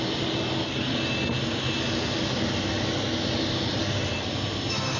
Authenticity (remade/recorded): recorded